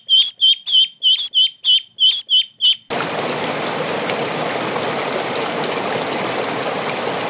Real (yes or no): yes